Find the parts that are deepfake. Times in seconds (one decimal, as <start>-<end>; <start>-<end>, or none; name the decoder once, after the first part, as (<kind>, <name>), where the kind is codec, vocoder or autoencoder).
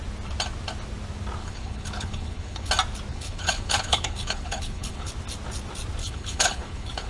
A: 1.4-2.7 (codec, HILCodec); 3.1-5.1; 6.0-7.1